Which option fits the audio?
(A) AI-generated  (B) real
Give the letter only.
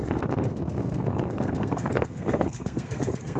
A